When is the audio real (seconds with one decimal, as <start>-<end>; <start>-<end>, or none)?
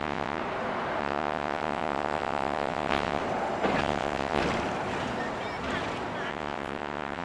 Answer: 0.4-1.0; 3.2-3.8; 4.4-6.3